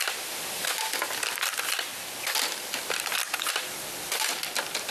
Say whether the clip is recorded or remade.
recorded